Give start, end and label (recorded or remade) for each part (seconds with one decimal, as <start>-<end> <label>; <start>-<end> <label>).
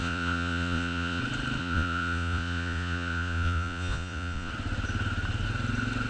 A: 0.0-1.2 remade; 1.2-1.6 recorded; 1.6-4.5 remade; 4.5-6.1 recorded